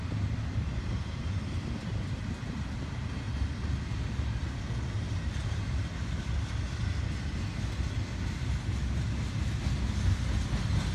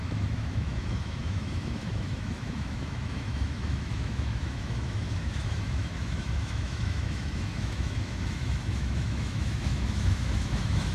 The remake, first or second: second